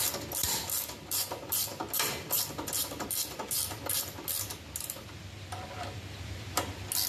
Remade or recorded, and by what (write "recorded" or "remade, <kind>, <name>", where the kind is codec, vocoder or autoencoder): remade, vocoder, BigVGAN v2